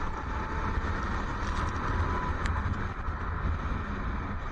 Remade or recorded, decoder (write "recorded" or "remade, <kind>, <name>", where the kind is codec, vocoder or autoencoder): recorded